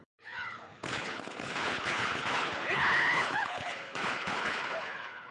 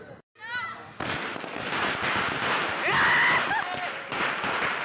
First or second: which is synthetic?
first